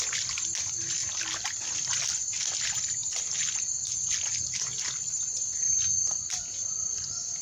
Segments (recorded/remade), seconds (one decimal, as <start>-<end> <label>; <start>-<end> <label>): 0.0-7.4 recorded

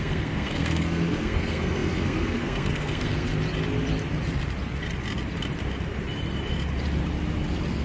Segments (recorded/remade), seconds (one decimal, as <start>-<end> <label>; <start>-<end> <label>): 0.0-3.3 remade; 3.3-7.8 recorded